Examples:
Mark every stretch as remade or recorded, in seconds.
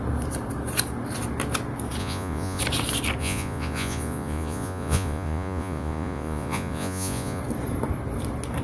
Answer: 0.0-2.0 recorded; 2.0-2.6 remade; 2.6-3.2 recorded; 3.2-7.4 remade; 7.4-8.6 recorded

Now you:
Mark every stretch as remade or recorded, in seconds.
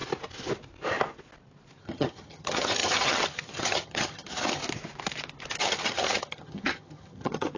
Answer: 0.0-1.8 recorded; 1.8-4.6 remade; 4.6-5.6 recorded; 5.6-7.6 remade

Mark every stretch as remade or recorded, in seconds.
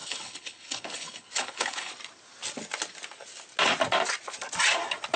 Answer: 0.0-1.9 remade; 1.9-5.2 recorded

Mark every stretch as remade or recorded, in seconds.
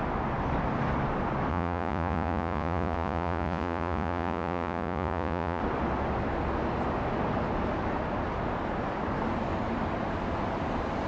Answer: 0.0-1.5 recorded; 1.5-5.6 remade; 5.6-11.1 recorded